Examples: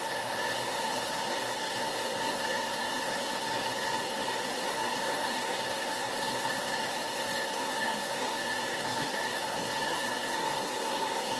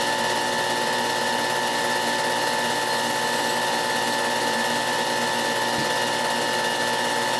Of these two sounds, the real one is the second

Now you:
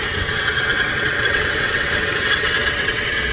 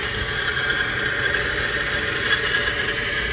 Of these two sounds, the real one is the second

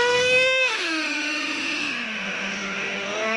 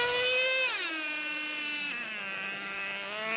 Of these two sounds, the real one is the second